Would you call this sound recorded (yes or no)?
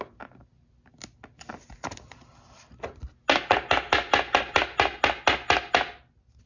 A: yes